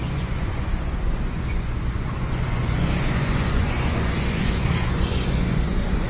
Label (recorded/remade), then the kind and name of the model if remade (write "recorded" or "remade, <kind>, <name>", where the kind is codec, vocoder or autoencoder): remade, vocoder, Vocos